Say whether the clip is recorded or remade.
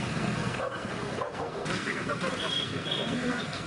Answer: remade